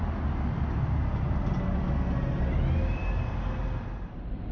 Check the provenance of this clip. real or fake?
real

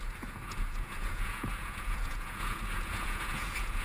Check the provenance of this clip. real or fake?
fake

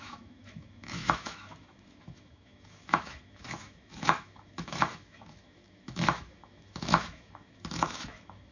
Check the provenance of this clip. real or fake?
fake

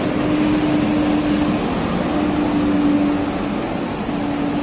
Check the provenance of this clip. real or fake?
real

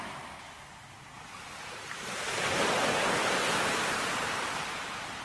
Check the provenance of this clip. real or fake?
real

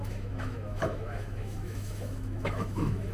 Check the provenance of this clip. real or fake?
fake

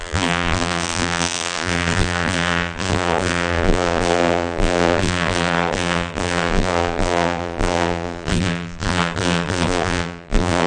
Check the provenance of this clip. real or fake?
fake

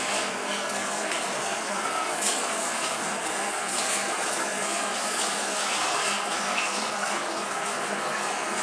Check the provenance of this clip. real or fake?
fake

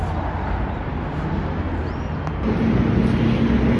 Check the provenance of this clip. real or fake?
real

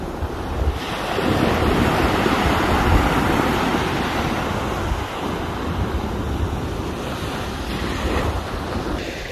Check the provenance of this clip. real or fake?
real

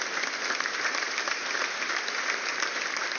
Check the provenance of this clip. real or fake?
real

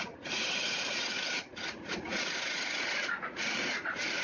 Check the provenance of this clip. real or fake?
fake